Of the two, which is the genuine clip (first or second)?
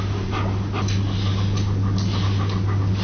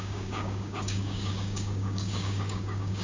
first